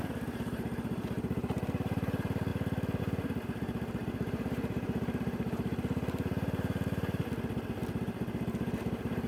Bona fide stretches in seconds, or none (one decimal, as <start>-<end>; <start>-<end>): 2.5-3.0; 7.2-8.0